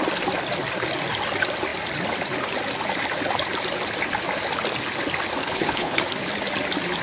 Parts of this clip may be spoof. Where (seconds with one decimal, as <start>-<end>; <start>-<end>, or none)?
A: 5.4-6.0